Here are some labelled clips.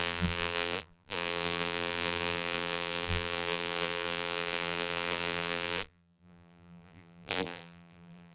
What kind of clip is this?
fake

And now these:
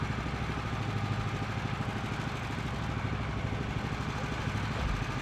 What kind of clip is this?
real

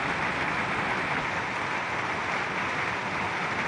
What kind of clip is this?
real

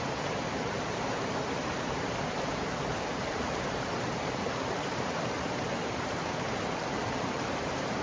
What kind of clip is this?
fake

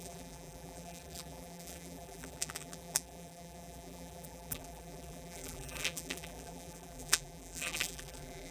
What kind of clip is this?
fake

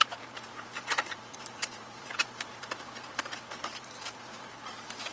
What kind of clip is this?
fake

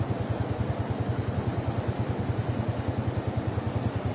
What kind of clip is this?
real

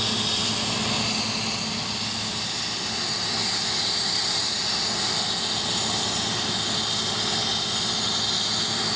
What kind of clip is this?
real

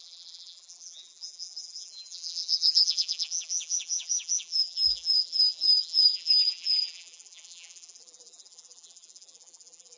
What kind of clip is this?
fake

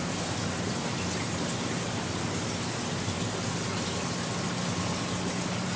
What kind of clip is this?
real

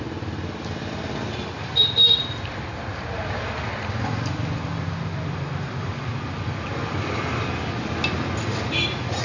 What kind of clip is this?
real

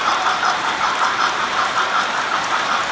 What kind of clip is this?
fake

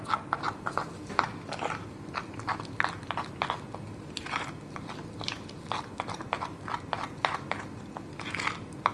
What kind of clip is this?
real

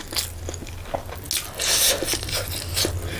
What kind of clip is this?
real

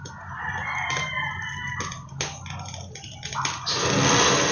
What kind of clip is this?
real